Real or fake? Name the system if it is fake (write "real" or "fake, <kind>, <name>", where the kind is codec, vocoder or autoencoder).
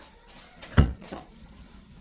fake, vocoder, Vocos